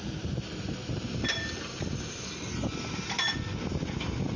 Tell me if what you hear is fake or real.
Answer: real